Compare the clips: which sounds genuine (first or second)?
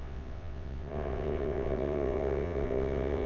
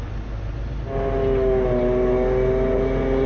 second